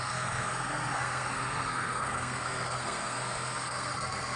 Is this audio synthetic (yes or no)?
yes